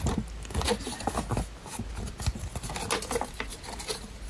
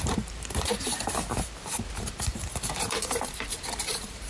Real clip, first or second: first